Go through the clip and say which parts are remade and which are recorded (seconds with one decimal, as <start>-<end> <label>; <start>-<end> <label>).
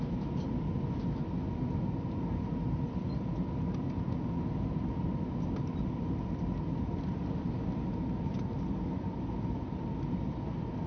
0.0-10.9 recorded